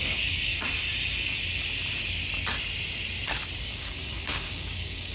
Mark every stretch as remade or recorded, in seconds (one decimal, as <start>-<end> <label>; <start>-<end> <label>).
0.0-0.5 remade; 0.5-3.6 recorded; 3.6-5.1 remade

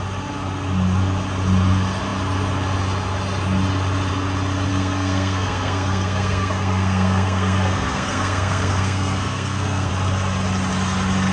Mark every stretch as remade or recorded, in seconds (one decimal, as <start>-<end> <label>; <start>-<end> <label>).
0.0-4.7 recorded; 4.7-9.9 remade; 9.9-11.3 recorded

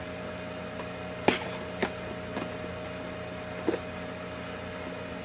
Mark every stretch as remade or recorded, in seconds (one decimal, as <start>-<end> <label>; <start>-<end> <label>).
0.0-5.2 recorded